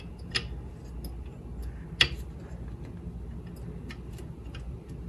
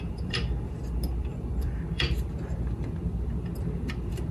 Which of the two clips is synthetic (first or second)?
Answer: second